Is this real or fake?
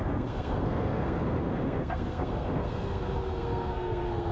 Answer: fake